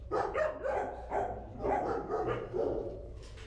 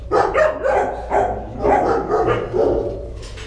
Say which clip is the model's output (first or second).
first